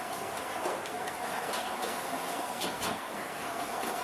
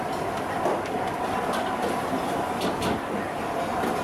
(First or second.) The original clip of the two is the second